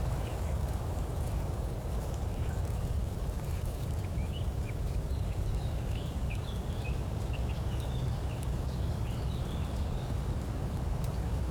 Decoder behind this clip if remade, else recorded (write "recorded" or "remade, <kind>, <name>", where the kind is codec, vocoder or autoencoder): remade, codec, DAC